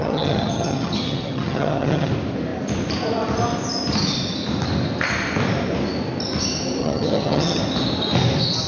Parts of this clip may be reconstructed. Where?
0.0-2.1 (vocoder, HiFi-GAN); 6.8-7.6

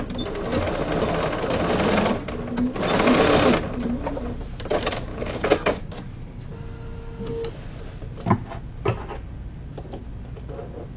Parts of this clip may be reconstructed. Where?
5.1-5.8 (codec, DAC)

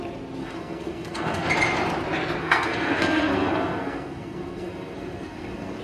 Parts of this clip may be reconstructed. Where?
0.4-1.5 (codec, SNAC); 2.4-5.8

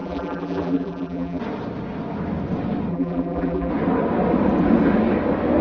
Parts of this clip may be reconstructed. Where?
0.0-1.4 (vocoder, BigVGAN v2); 2.9-3.7